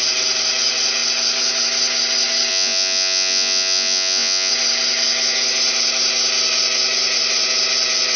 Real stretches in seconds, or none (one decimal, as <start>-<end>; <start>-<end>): 0.0-2.5; 4.5-8.2